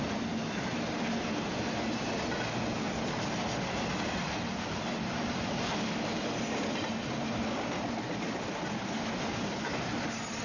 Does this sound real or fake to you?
real